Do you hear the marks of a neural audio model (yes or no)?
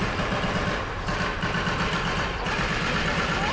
no